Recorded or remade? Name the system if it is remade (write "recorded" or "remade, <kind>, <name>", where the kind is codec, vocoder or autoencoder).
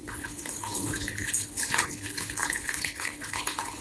remade, codec, HILCodec